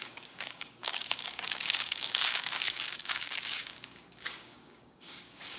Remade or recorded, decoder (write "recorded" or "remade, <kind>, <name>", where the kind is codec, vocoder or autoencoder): remade, codec, DAC